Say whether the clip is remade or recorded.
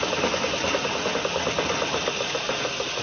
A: recorded